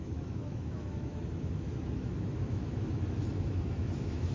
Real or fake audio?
fake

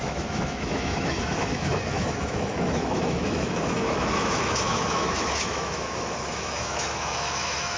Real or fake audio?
fake